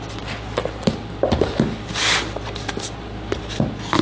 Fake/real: fake